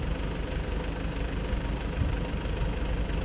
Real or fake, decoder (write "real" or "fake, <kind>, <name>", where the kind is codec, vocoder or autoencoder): real